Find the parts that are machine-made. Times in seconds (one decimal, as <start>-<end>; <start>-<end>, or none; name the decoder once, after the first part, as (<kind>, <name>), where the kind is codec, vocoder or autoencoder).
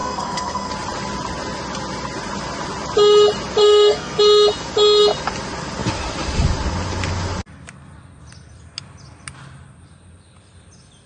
0.0-0.7 (codec, SNAC); 3.6-4.2